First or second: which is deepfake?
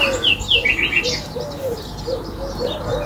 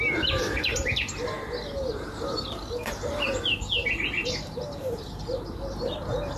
second